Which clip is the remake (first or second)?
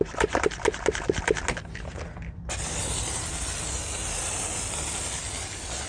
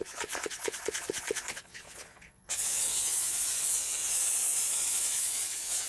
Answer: second